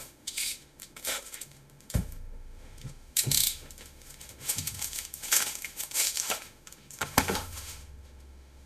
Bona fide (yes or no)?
no